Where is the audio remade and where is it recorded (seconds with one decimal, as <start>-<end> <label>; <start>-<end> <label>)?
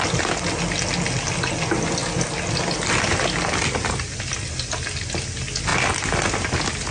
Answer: 0.0-6.9 recorded